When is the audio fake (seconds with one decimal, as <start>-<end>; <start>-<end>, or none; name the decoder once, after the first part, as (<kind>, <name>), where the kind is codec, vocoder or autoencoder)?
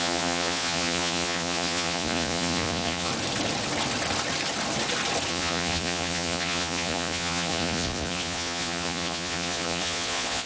0.0-3.1 (vocoder, Vocos); 5.3-10.5